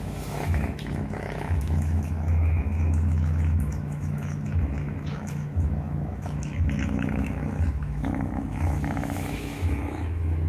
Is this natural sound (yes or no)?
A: no